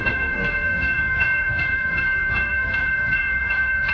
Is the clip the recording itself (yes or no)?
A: no